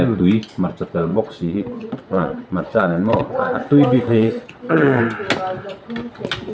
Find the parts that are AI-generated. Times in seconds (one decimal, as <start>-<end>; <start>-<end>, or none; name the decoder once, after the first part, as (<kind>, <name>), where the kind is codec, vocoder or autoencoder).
1.1-5.0 (vocoder, WaveNeXt)